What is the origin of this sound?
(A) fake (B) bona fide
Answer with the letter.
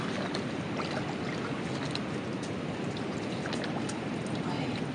B